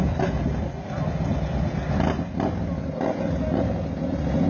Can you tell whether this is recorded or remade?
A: recorded